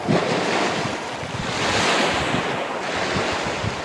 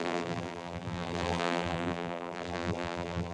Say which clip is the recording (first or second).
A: first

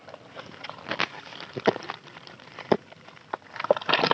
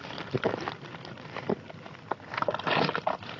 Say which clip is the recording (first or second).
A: second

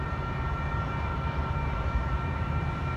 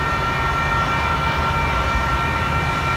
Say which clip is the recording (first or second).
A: second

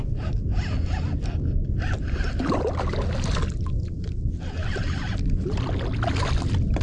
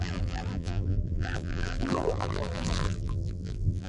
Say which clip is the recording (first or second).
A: first